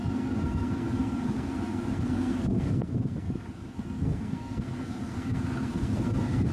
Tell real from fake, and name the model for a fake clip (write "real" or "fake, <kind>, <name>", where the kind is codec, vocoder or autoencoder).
fake, codec, SNAC